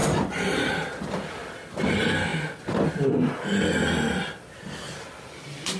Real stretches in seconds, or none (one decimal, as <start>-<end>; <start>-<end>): 0.7-5.8